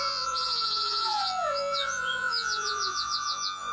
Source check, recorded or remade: remade